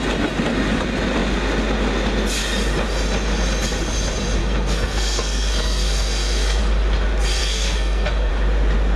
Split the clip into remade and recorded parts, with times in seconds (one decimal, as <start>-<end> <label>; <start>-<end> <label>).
0.0-4.4 recorded; 4.4-6.6 remade; 6.6-7.4 recorded; 7.4-8.3 remade; 8.3-9.0 recorded

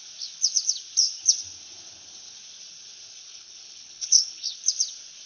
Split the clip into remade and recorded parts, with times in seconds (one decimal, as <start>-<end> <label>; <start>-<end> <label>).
0.0-3.3 recorded; 3.3-4.6 remade; 4.6-5.3 recorded

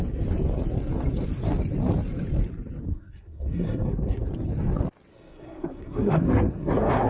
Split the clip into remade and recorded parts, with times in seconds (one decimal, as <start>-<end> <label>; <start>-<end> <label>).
0.0-2.9 recorded; 2.9-4.3 remade; 4.3-5.1 recorded; 5.1-7.1 remade

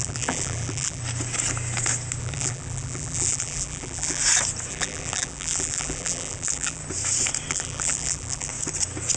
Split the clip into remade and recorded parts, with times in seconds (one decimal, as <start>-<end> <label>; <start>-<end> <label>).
0.0-1.0 remade; 1.0-2.2 recorded; 2.2-4.2 remade; 4.2-4.7 recorded; 4.7-6.8 remade; 6.8-7.5 recorded; 7.5-8.5 remade; 8.5-9.2 recorded

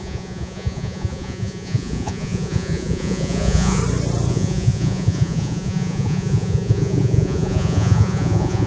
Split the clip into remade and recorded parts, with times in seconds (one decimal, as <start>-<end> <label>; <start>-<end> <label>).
0.0-3.8 remade; 3.8-4.3 recorded; 4.3-8.7 remade

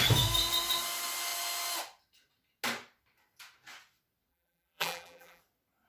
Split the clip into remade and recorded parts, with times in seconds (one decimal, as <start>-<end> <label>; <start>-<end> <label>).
0.0-4.3 recorded; 4.3-5.4 remade; 5.4-5.9 recorded

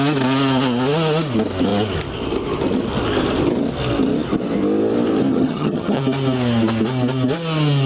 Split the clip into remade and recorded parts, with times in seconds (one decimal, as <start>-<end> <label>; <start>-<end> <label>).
0.0-5.3 recorded; 5.3-6.0 remade; 6.0-7.9 recorded